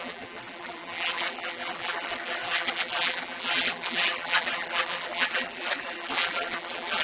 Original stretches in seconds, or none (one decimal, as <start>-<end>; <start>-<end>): none